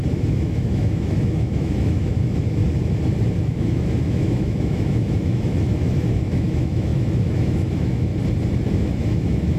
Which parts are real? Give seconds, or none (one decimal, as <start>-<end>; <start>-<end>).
2.6-3.4; 8.1-8.7